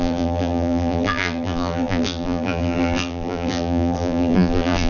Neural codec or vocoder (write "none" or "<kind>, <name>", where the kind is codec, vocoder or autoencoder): vocoder, BigVGAN v2